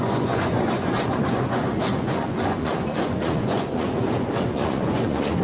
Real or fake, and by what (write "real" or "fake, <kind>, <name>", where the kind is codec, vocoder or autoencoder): fake, vocoder, Vocos